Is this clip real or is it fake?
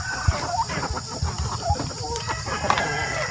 real